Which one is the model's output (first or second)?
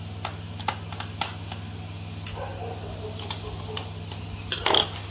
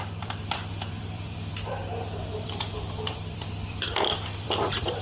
second